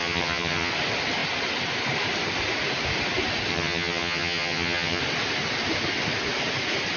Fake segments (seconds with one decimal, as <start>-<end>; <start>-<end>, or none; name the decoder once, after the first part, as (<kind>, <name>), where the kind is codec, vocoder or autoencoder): 0.0-0.7 (vocoder, HiFi-GAN); 3.5-5.0

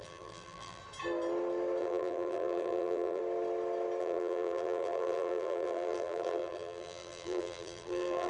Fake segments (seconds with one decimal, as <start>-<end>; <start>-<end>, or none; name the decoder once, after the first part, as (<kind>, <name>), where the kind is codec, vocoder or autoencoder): 0.0-0.8 (vocoder, BigVGAN v2); 1.8-3.2; 4.0-8.3